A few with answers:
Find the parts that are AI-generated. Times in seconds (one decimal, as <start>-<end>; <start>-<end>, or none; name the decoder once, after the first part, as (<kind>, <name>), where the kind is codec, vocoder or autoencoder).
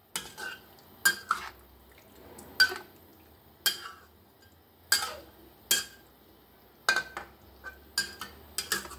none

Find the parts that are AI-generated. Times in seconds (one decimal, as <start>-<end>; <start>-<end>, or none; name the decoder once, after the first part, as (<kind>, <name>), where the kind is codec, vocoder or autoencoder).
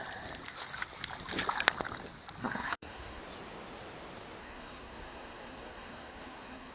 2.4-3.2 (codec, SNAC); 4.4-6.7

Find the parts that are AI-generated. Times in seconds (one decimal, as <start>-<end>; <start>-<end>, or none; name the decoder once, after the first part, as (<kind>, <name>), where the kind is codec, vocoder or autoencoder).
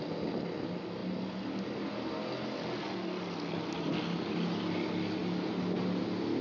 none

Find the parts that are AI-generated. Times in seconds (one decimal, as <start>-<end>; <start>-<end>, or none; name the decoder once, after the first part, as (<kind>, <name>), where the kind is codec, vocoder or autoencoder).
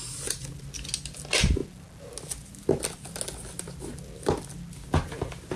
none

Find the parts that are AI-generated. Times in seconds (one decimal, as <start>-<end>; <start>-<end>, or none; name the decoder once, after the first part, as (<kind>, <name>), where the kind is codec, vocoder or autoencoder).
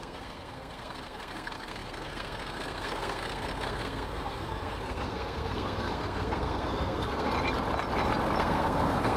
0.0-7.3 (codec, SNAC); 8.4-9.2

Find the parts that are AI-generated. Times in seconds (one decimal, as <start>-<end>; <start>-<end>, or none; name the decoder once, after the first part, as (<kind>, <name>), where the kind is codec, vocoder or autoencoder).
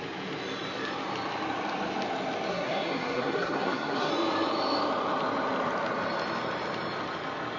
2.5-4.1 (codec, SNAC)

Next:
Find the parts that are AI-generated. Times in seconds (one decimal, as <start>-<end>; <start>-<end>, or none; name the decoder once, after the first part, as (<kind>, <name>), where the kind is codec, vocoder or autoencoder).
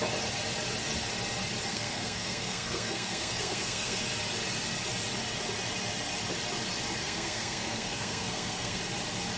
1.7-4.0 (codec, SNAC); 7.0-8.8